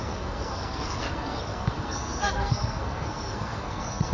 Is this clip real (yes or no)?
no